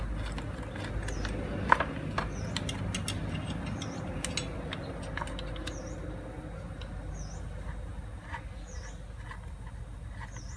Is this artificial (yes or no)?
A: no